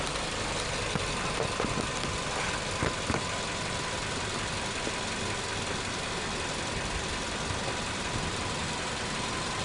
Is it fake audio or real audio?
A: real